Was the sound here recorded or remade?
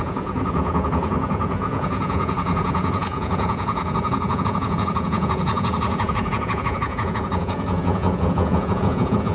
remade